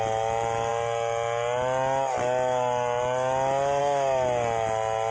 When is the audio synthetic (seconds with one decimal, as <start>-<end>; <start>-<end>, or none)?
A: none